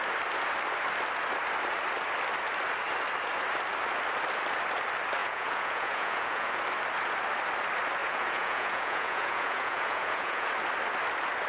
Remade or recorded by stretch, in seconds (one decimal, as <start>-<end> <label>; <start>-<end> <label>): 0.0-5.2 recorded; 5.2-6.6 remade; 6.6-8.0 recorded; 8.0-10.5 remade; 10.5-11.5 recorded